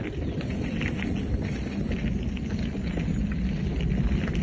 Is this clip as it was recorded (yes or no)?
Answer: yes